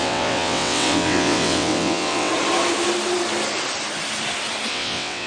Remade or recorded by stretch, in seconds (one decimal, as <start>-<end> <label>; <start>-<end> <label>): 0.0-2.3 remade; 2.3-4.7 recorded; 4.7-5.3 remade